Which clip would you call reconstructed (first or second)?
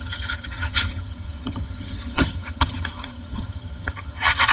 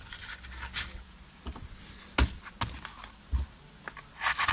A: first